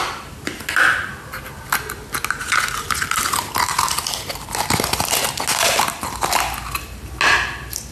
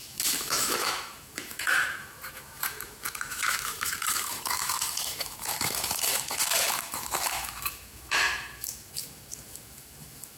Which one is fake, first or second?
second